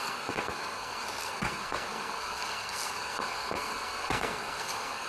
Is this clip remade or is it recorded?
remade